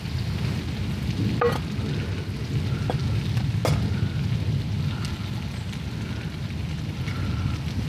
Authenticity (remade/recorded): recorded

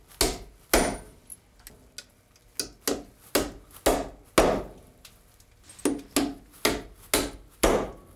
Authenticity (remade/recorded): recorded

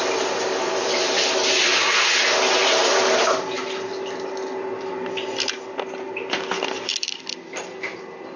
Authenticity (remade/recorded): recorded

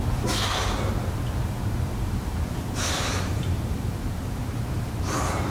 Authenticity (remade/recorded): remade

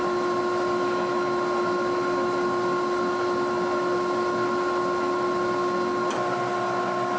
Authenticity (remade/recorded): recorded